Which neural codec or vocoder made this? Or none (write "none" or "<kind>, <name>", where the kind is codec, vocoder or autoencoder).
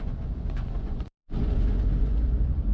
vocoder, Vocos